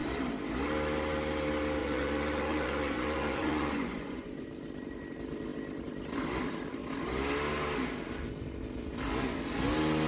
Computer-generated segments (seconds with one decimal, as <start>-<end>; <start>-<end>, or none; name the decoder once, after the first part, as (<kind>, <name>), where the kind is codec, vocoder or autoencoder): 1.8-4.5 (vocoder, Vocos)